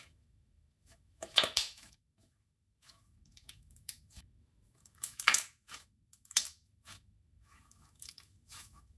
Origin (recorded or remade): remade